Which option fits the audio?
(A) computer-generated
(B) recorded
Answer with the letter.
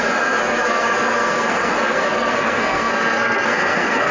A